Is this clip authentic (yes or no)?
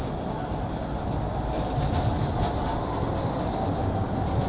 yes